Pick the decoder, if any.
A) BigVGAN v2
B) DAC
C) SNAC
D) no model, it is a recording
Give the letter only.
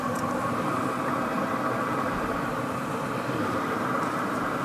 A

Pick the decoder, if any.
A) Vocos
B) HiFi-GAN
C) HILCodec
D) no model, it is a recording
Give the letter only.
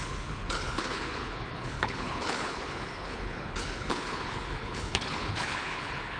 C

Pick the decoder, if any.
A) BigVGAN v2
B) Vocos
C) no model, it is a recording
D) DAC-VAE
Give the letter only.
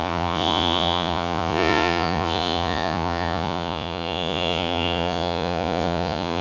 B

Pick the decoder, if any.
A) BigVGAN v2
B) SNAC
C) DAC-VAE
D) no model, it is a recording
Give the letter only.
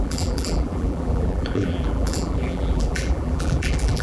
A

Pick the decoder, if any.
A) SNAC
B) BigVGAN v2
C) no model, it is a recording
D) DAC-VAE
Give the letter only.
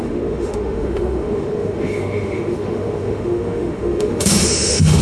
D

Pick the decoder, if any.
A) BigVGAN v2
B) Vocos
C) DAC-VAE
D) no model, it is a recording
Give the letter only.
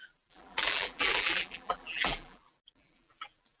A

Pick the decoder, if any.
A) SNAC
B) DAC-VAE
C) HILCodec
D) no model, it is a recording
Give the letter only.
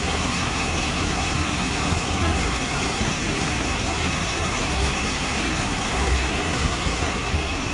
A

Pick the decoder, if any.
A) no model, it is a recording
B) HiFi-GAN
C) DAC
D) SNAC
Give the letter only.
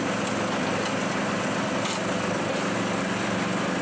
A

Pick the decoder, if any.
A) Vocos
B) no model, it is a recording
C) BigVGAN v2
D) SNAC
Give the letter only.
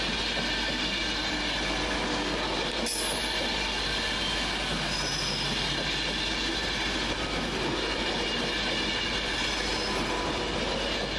B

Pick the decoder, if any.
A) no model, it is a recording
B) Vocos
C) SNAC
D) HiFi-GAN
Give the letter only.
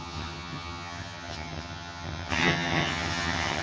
D